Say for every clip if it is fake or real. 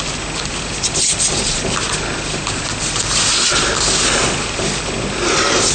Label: real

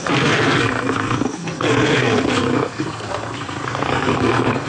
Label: fake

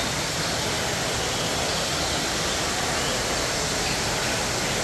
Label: real